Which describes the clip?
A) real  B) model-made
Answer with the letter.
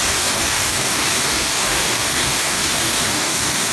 B